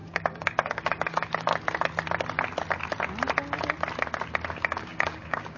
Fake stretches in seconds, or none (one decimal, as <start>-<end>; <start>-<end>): 0.0-1.5; 4.5-5.6

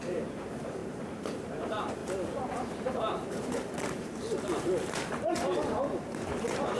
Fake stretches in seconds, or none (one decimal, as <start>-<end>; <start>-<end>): 0.0-2.0; 3.0-5.4; 6.0-6.8